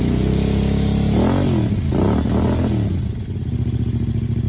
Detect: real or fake real